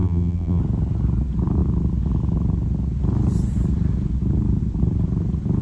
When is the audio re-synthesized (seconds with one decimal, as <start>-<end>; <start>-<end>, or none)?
0.0-0.6